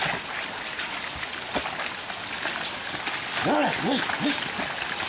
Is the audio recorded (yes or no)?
yes